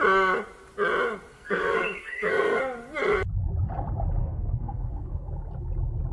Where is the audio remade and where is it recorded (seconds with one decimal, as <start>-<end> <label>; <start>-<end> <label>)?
0.0-1.3 recorded; 1.3-2.6 remade; 2.6-4.2 recorded; 4.2-5.3 remade; 5.3-6.1 recorded